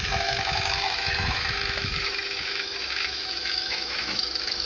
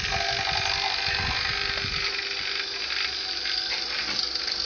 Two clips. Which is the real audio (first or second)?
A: second